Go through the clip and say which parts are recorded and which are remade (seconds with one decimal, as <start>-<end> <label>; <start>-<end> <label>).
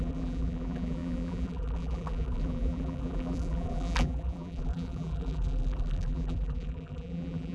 0.0-7.5 remade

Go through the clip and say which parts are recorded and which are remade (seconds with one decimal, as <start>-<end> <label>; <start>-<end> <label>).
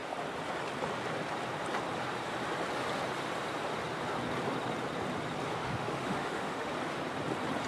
0.0-5.6 recorded; 5.6-6.7 remade; 6.7-7.7 recorded